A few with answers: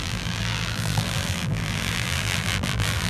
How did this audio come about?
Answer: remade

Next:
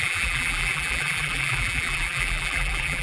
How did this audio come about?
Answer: remade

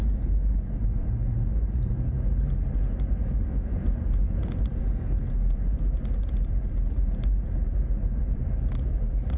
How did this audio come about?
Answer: remade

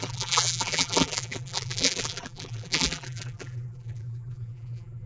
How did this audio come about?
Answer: remade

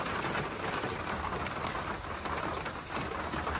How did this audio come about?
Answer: recorded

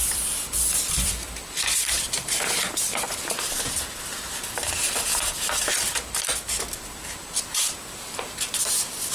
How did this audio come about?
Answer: remade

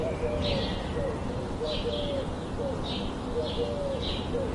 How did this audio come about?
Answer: recorded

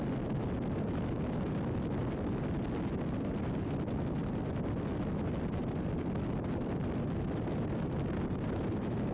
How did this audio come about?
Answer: recorded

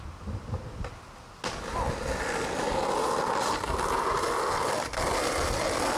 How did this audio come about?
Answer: recorded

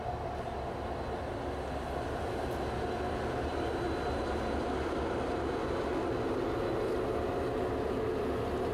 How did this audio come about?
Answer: recorded